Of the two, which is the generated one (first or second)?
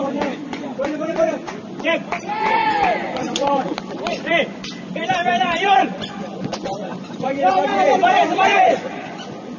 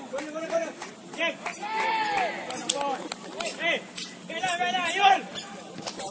first